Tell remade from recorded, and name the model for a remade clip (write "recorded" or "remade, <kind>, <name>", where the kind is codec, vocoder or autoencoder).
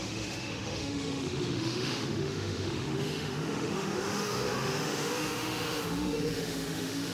remade, autoencoder, DAC-VAE